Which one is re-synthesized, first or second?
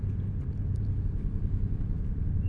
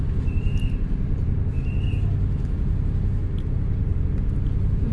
first